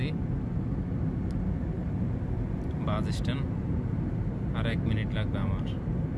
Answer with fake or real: real